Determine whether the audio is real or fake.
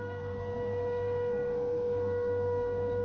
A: fake